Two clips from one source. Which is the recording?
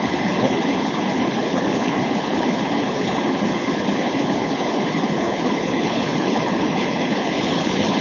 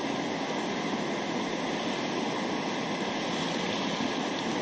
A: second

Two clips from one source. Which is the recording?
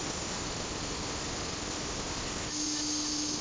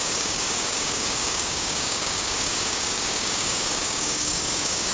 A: first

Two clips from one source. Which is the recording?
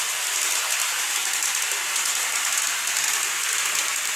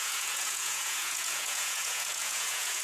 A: first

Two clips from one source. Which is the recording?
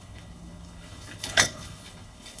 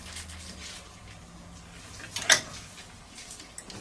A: second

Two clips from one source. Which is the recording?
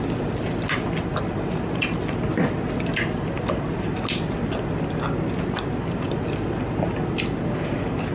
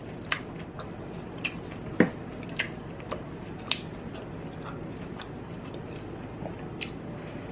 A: first